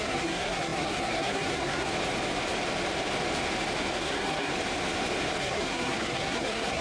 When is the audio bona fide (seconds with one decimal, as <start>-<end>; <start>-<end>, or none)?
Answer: 1.9-4.0; 4.5-5.4